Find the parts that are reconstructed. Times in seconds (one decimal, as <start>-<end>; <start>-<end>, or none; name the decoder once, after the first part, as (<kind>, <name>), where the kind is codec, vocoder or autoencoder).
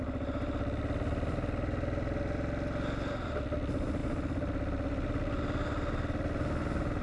none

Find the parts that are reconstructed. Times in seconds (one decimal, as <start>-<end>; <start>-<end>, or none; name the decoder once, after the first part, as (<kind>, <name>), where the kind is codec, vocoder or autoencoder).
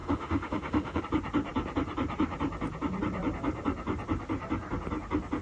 0.0-1.0 (autoencoder, DAC-VAE)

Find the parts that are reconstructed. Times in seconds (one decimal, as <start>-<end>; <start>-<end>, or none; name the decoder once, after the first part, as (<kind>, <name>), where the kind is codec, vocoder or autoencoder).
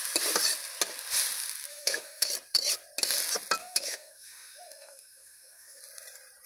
1.7-2.3 (autoencoder, DAC-VAE); 3.6-5.8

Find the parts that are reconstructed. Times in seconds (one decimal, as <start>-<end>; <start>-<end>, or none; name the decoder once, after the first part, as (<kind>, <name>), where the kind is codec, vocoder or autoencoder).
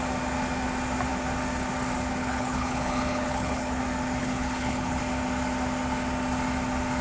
2.2-3.8 (codec, HILCodec); 4.2-5.0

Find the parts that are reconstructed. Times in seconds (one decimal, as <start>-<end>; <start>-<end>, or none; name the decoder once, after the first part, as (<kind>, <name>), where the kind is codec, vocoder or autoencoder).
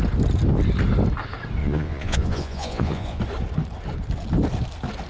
1.6-3.2 (vocoder, Vocos)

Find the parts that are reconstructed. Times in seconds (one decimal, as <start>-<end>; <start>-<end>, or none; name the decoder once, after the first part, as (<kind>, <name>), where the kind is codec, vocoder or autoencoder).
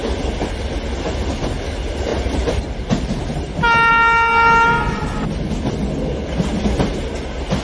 2.1-3.2 (vocoder, BigVGAN v2)